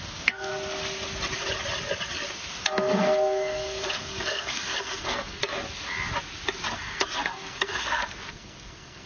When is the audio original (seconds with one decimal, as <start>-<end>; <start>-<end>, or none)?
0.5-2.6; 5.4-6.7